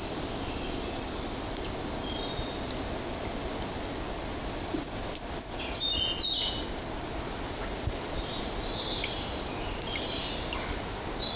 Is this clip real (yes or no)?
yes